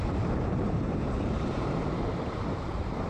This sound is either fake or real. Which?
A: fake